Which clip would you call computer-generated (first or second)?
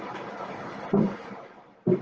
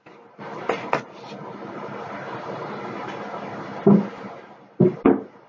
first